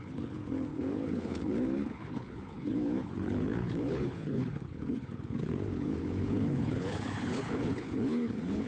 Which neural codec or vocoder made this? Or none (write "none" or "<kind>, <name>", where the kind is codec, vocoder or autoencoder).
codec, HILCodec